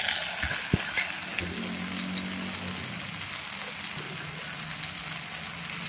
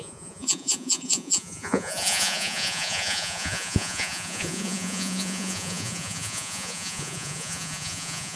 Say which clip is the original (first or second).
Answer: first